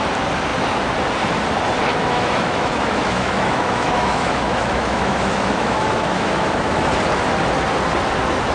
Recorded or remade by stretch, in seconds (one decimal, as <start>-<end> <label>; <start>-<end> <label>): 0.0-1.9 recorded; 1.9-6.9 remade; 6.9-8.5 recorded